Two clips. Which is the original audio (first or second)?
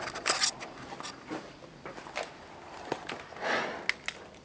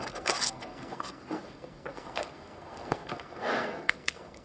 first